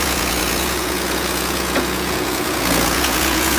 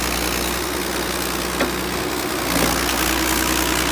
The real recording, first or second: second